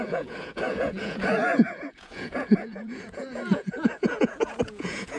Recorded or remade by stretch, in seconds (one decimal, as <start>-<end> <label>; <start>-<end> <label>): 0.0-5.2 remade